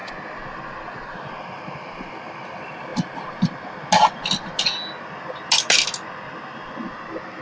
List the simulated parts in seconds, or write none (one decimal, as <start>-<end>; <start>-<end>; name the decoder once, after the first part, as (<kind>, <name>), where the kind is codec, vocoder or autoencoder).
none